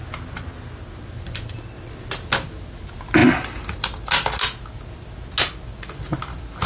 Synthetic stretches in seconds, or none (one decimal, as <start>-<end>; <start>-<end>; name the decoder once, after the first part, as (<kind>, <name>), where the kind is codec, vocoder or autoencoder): none